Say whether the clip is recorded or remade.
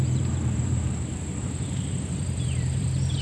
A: remade